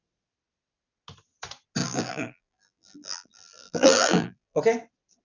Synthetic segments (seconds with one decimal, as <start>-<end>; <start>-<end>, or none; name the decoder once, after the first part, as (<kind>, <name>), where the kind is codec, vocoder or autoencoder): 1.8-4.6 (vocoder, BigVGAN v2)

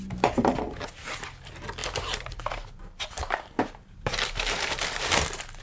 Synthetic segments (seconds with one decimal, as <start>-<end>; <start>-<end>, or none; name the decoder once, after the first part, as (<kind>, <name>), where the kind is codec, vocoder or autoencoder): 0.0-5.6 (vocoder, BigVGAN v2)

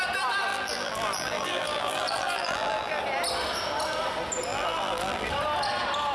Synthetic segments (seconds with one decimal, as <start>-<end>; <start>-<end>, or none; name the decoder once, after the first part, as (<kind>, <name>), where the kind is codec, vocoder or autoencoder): 0.5-3.0 (vocoder, BigVGAN v2); 4.5-5.3

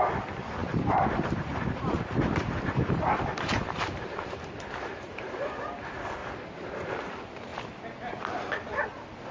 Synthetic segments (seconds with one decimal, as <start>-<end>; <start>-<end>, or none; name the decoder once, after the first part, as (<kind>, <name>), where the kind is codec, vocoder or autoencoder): 0.6-4.7 (vocoder, BigVGAN v2); 6.2-6.9

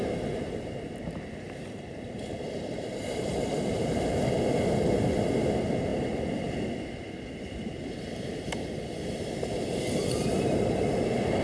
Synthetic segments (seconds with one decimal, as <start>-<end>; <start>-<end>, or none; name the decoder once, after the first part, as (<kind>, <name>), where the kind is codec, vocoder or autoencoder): 0.0-5.9 (vocoder, BigVGAN v2); 7.4-11.4

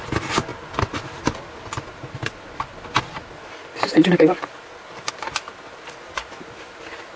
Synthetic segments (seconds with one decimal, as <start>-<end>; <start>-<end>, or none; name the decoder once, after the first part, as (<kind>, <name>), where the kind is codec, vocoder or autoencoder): none

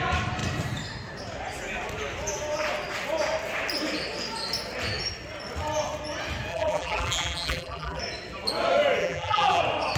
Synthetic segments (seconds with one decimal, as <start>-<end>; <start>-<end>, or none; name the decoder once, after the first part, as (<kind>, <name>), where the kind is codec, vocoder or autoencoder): 6.5-8.0 (vocoder, BigVGAN v2); 9.0-9.6

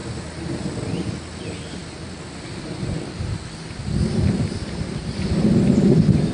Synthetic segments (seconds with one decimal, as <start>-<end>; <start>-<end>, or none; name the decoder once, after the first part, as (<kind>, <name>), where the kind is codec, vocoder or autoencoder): none